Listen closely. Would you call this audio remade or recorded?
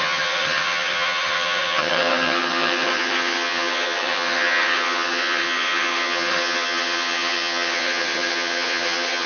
remade